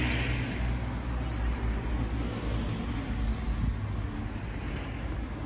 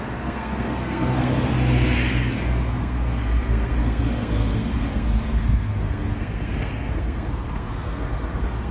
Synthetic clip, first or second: second